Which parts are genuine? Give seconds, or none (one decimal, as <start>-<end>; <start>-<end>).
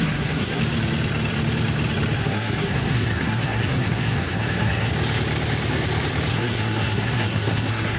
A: 0.6-2.2; 4.9-6.3